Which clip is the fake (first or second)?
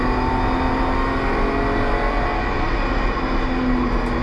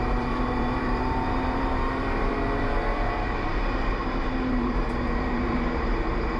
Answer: second